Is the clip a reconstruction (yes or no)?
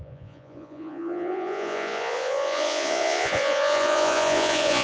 yes